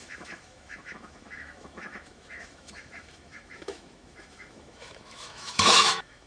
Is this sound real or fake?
fake